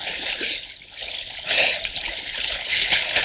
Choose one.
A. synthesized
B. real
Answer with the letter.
A